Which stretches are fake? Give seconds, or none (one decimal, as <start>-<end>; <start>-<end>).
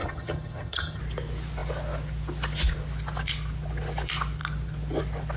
0.0-1.0